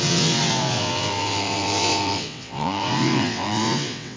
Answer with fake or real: fake